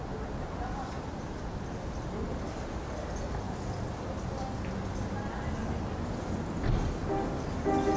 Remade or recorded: recorded